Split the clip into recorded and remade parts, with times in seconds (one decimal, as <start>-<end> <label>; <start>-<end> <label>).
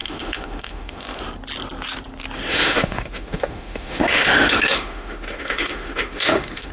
0.0-1.2 remade; 1.2-2.5 recorded; 2.5-6.7 remade